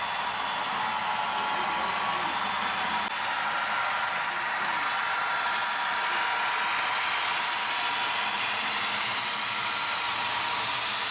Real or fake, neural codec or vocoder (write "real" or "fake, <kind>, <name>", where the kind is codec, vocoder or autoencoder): real